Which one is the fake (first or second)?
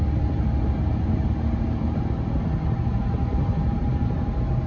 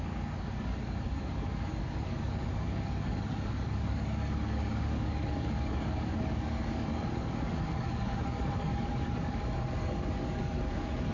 second